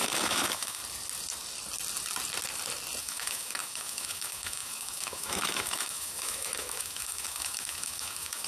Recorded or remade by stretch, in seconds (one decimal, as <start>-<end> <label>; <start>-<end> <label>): 0.0-0.8 remade; 0.8-3.0 recorded; 3.0-8.5 remade